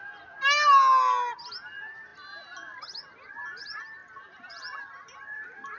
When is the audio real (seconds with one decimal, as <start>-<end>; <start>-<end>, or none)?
0.0-4.0